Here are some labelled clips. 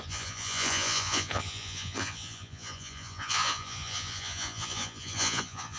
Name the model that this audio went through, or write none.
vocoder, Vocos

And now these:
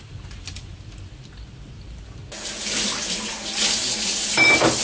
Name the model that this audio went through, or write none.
none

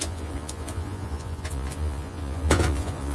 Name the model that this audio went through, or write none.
vocoder, Vocos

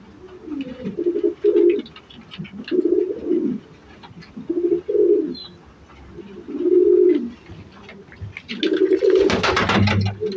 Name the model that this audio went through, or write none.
none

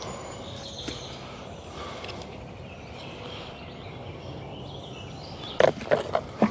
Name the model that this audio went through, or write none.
none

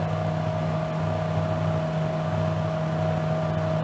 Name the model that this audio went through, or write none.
none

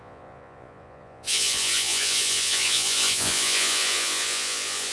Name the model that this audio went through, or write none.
vocoder, Vocos